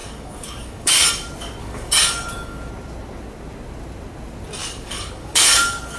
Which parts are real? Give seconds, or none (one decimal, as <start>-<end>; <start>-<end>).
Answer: 1.1-1.6; 2.7-4.6